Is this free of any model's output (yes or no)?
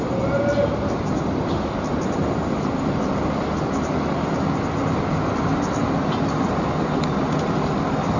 yes